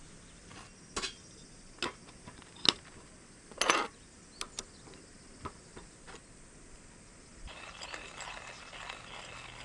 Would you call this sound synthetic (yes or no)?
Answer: no